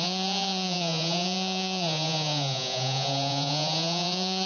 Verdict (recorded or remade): remade